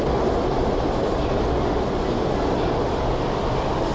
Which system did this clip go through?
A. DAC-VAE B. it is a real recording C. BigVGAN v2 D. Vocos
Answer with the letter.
B